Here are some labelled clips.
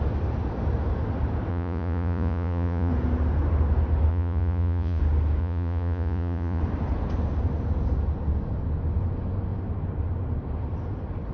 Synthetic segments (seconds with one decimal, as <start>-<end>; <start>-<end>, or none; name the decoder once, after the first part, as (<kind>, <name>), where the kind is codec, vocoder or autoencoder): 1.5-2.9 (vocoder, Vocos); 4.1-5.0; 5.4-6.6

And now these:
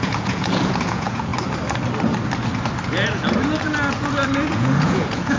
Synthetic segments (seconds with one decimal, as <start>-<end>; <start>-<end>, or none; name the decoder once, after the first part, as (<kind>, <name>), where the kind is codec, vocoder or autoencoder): 0.0-1.3 (vocoder, Vocos); 4.5-5.4

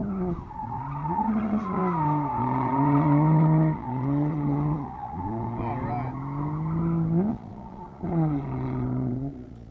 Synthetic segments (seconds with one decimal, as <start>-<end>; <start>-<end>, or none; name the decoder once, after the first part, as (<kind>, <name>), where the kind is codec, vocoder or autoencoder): 0.5-1.8 (vocoder, Vocos); 2.4-5.7; 7.3-9.7

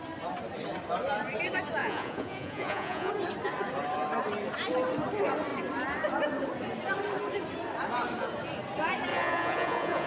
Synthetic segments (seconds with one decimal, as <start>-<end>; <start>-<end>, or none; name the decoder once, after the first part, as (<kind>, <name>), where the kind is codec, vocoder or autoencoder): 1.8-3.1 (vocoder, Vocos); 9.1-10.1

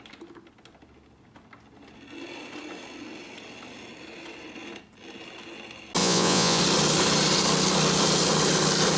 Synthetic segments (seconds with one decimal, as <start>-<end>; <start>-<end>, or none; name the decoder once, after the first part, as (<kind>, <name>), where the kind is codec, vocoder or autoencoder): 6.0-6.6 (vocoder, Vocos)

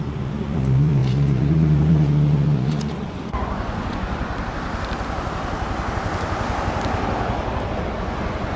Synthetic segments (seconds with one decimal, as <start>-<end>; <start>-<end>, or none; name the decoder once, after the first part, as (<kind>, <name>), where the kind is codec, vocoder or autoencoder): 0.0-4.3 (vocoder, Vocos); 8.0-8.6

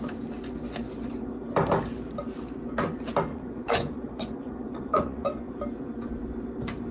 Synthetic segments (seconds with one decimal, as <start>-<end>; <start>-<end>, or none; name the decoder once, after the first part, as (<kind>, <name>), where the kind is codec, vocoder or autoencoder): 3.3-5.5 (vocoder, Vocos)